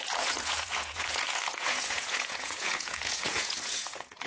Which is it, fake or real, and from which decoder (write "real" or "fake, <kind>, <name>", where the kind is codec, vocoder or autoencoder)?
fake, vocoder, Vocos